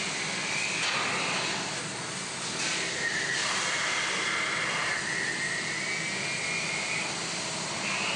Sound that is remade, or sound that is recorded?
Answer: recorded